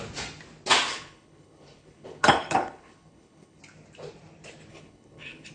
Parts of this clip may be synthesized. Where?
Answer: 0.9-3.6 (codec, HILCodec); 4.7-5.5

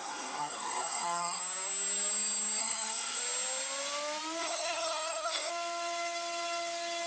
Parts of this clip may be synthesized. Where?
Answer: 0.0-1.4 (codec, SNAC); 2.6-3.2; 4.4-5.5